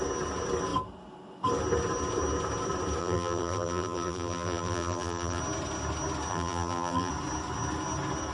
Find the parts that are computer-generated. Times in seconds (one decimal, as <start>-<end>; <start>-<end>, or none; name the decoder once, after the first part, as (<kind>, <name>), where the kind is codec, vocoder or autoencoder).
3.0-5.4 (vocoder, BigVGAN v2); 6.3-7.1